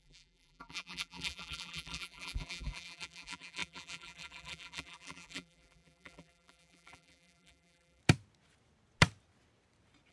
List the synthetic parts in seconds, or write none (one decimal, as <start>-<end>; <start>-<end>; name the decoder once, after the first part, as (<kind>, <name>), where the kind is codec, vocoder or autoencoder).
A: 0.0-8.0 (vocoder, BigVGAN v2)

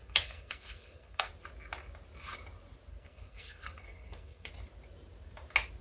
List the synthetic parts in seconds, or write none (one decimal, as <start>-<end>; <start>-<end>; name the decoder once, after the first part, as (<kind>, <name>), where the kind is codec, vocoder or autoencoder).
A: 0.0-1.3 (codec, SNAC); 2.9-4.5

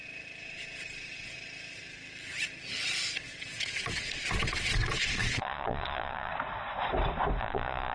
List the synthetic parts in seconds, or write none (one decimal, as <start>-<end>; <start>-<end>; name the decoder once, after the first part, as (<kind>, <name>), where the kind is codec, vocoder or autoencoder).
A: 3.6-6.3 (vocoder, Vocos); 7.4-7.9

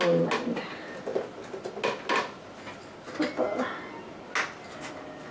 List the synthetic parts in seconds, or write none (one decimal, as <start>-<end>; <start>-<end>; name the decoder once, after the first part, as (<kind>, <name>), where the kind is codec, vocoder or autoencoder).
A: none

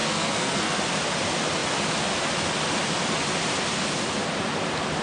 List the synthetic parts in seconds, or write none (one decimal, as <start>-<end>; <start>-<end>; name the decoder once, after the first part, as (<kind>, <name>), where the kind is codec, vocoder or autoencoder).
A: 0.0-0.8 (codec, SNAC)

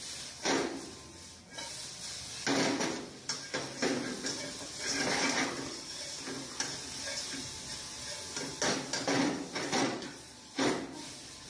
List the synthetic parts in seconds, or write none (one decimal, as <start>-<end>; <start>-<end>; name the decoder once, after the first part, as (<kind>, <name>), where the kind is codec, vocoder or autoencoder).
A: 9.8-10.6 (vocoder, Vocos)